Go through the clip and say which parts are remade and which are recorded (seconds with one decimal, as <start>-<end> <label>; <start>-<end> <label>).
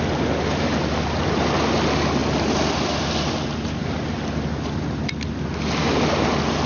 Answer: 0.0-6.7 recorded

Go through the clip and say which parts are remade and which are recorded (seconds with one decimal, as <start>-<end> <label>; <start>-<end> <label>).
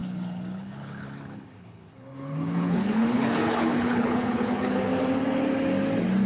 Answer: 0.0-4.8 remade; 4.8-6.3 recorded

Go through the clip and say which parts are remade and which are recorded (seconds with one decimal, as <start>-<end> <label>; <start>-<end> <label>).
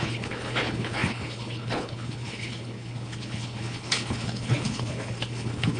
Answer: 0.0-5.8 remade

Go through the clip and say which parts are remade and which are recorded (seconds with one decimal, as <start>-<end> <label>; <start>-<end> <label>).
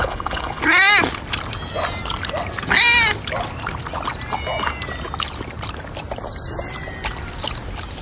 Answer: 0.0-0.6 remade; 0.6-8.0 recorded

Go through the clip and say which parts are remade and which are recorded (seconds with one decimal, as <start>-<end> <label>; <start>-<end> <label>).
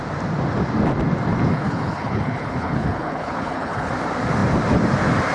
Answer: 0.0-1.5 recorded; 1.5-3.9 remade; 3.9-5.3 recorded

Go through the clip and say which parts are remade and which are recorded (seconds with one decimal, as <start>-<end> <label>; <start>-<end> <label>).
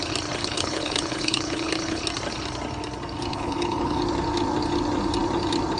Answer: 0.0-0.4 recorded; 0.4-2.0 remade; 2.0-3.3 recorded; 3.3-4.0 remade; 4.0-5.8 recorded